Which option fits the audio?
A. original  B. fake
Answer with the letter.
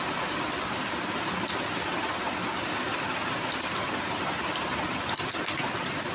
A